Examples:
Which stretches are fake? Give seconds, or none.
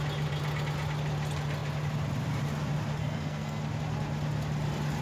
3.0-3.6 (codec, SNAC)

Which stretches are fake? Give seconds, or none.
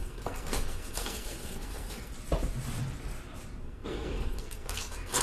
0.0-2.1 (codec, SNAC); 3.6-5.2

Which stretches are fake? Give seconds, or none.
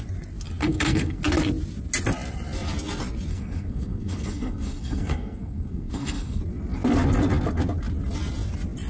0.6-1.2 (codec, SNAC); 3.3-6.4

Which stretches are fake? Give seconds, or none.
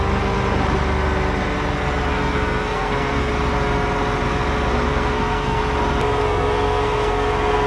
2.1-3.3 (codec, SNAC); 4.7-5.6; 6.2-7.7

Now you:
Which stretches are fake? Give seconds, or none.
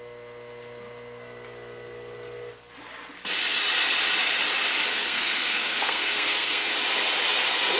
4.9-6.7 (codec, SNAC)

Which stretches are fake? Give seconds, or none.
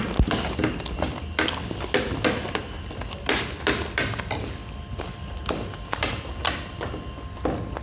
none